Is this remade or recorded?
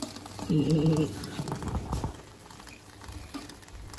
recorded